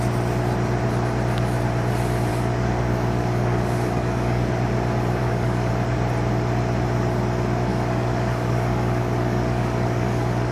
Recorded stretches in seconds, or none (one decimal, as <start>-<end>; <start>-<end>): 0.0-2.3; 4.5-5.2; 5.7-7.7